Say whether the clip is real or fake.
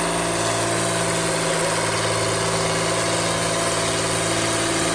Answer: real